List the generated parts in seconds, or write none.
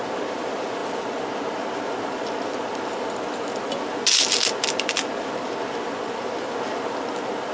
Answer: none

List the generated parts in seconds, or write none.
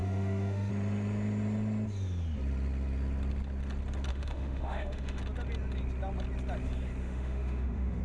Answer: 0.0-0.7 (autoencoder, DAC-VAE); 4.1-5.2; 7.0-8.0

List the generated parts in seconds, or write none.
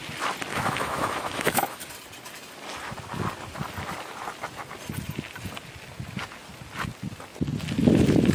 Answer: 0.5-1.9 (autoencoder, DAC-VAE)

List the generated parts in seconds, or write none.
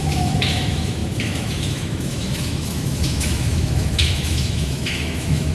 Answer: 0.0-5.5 (autoencoder, DAC-VAE)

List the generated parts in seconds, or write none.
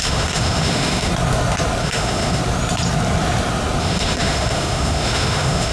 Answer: 0.0-1.1 (autoencoder, DAC-VAE); 1.8-2.4; 3.8-5.7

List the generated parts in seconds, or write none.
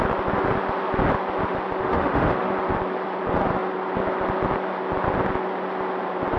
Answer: 1.8-2.5 (autoencoder, DAC-VAE)